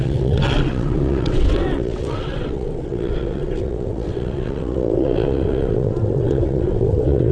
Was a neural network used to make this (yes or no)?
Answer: yes